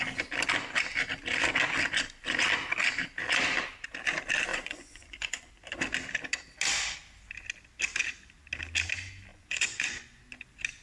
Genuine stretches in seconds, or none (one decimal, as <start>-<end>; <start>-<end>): 0.0-4.5; 5.5-9.3; 10.2-10.8